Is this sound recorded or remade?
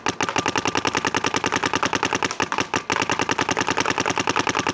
recorded